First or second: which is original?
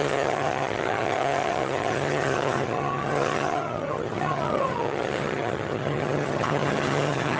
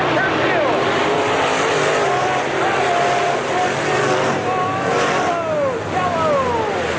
second